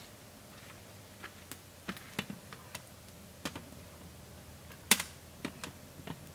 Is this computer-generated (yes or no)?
no